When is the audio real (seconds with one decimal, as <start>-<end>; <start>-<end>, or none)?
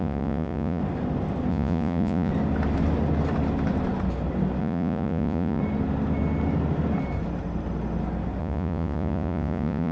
0.8-1.5; 2.3-4.6; 5.6-8.4